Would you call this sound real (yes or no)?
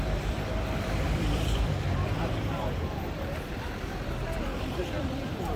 no